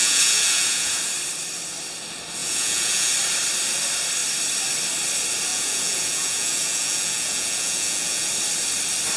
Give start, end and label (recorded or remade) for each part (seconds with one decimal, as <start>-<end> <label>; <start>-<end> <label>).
0.0-1.0 remade; 1.0-2.4 recorded; 2.4-3.1 remade; 3.1-5.5 recorded; 5.5-8.3 remade; 8.3-9.2 recorded